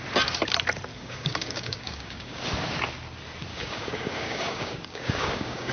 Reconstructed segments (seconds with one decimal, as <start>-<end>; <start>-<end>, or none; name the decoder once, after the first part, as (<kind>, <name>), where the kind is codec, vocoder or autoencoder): 0.9-2.4 (codec, DAC); 3.5-5.7